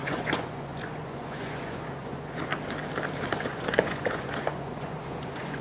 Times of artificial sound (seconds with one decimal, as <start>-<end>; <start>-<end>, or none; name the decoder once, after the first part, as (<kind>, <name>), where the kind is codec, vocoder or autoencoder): 0.0-2.5 (vocoder, Vocos); 3.5-5.6